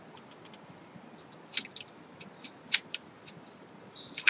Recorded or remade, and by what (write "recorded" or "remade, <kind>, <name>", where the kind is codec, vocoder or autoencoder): recorded